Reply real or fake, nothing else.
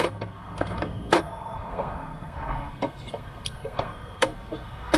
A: fake